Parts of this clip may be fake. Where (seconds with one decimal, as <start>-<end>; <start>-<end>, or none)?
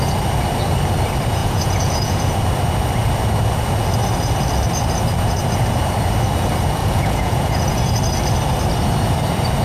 1.4-2.3; 6.8-7.9